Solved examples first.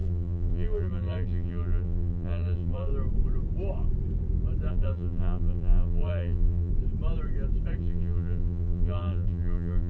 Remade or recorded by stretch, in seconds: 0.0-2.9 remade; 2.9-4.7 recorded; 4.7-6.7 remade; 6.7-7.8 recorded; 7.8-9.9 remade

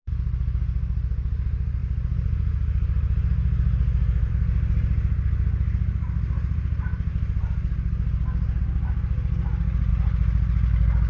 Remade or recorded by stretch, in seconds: 0.0-11.1 recorded

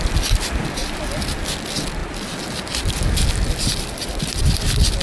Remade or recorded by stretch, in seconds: 0.0-5.0 recorded